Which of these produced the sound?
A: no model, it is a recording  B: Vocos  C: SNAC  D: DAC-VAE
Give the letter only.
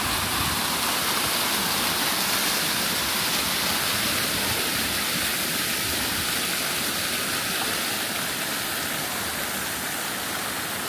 A